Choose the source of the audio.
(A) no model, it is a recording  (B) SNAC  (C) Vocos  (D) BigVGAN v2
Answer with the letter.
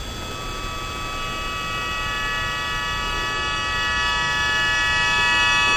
A